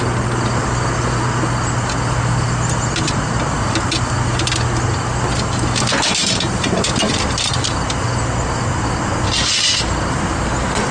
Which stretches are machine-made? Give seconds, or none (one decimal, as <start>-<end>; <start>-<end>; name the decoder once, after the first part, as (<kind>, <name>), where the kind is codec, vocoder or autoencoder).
none